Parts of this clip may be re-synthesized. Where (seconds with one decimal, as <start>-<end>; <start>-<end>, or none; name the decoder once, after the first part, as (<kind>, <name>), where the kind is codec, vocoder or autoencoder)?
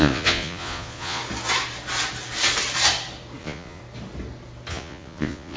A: 0.0-1.2 (vocoder, Vocos); 3.4-3.8; 4.7-5.6